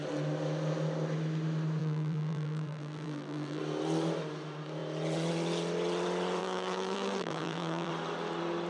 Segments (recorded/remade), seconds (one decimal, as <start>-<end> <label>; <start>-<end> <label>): 0.0-1.8 recorded; 1.8-3.6 remade; 3.6-6.4 recorded; 6.4-7.9 remade; 7.9-8.7 recorded